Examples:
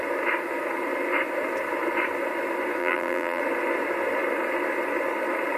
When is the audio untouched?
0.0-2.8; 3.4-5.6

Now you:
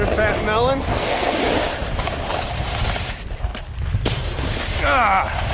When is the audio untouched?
0.0-0.9; 1.4-5.5

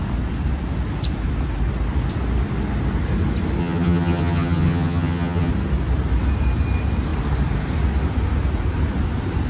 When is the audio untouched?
0.0-3.6; 5.5-9.5

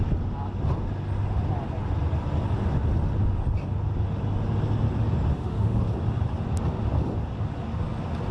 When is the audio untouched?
0.0-5.3; 5.8-8.3

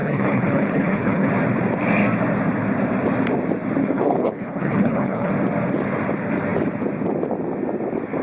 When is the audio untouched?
1.3-3.8; 5.3-8.2